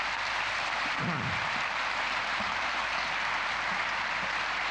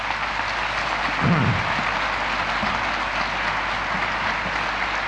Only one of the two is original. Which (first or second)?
second